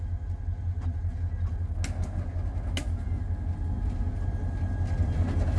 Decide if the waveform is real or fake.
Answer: real